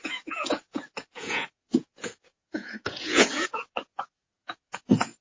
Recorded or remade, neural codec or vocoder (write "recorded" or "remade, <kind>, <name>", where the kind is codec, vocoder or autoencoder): remade, vocoder, Vocos